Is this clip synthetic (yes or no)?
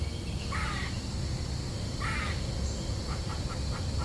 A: no